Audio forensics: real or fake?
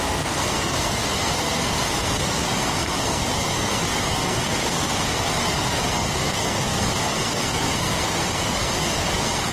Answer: fake